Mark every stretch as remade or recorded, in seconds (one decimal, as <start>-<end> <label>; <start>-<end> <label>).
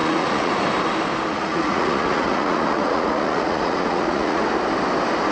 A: 0.0-0.5 remade; 0.5-1.3 recorded; 1.3-4.4 remade; 4.4-5.3 recorded